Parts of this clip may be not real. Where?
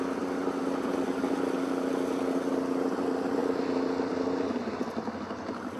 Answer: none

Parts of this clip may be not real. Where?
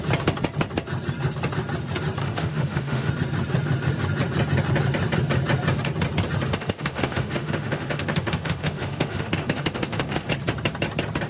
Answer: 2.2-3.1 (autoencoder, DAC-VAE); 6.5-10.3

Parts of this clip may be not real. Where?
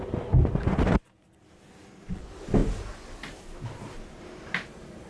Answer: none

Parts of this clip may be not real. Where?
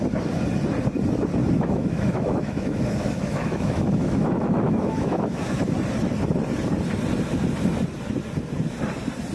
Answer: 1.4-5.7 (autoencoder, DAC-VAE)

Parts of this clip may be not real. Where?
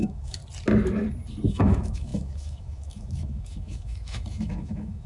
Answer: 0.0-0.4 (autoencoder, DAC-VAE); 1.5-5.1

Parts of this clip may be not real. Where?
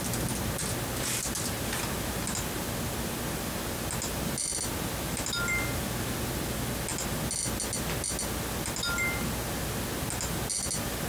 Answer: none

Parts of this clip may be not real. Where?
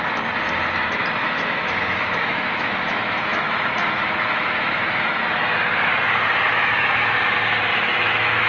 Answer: 1.2-5.2 (autoencoder, DAC-VAE); 6.5-7.1; 7.7-8.5